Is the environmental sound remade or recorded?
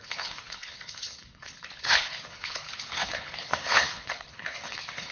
remade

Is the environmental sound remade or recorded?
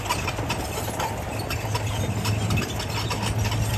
recorded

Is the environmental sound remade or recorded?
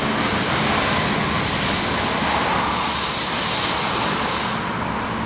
recorded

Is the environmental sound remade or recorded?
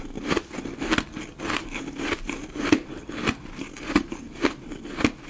recorded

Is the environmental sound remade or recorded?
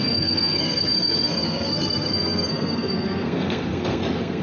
remade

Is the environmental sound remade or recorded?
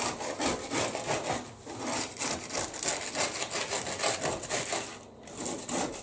recorded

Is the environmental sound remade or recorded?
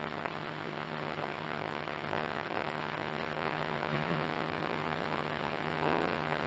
remade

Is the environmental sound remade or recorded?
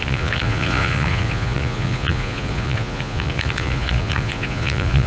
remade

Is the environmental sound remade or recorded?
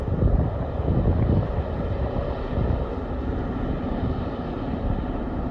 recorded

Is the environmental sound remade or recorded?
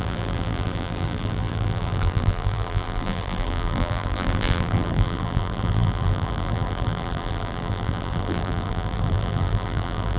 remade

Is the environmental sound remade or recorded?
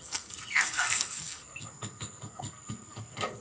remade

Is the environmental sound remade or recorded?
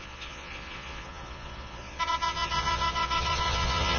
remade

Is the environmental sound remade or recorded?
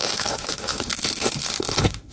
remade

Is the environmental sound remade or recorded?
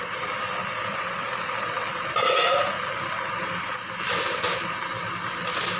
recorded